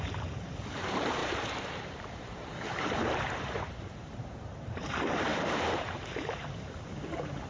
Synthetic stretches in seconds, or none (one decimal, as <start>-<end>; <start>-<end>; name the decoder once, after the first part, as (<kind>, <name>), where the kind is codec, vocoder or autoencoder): 0.0-7.5 (vocoder, BigVGAN v2)